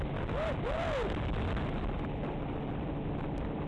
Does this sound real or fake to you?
fake